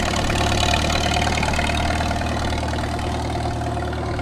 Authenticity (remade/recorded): recorded